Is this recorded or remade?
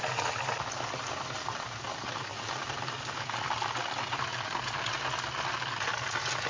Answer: recorded